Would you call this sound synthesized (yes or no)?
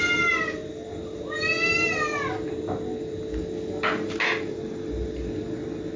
no